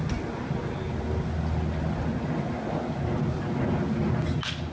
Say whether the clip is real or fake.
real